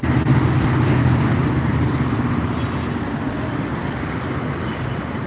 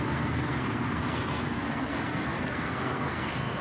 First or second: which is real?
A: first